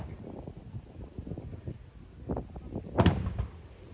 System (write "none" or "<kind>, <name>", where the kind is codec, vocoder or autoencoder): none